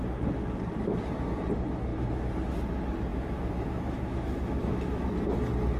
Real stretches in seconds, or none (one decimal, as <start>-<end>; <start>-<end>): 0.0-3.1; 5.2-5.8